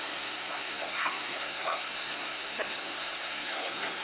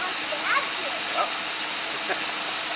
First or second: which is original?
second